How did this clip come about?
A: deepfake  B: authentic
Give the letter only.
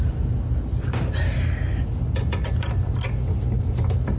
B